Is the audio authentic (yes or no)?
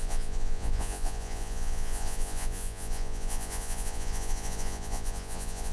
no